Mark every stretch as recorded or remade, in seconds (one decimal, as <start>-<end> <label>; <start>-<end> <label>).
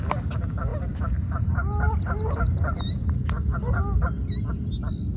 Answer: 0.0-0.7 recorded; 0.7-3.7 remade; 3.7-5.2 recorded